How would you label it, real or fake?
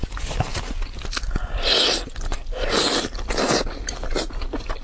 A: real